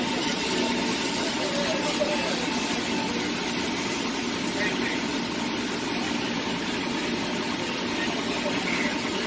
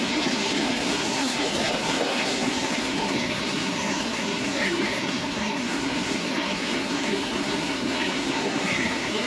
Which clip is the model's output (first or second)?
second